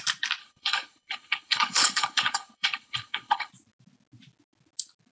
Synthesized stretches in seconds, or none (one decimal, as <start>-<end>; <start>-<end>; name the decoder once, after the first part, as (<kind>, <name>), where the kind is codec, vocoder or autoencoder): 0.4-3.5 (codec, HILCodec)